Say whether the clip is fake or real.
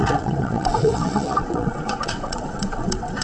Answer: fake